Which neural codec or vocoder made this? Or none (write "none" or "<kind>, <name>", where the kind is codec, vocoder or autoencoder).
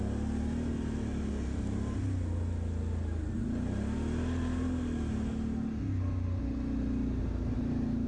none